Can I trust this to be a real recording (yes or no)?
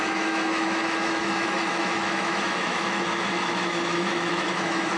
no